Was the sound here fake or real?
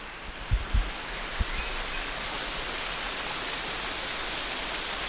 real